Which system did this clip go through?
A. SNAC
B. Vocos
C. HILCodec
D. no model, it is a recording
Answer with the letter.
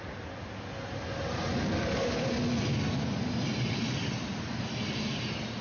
D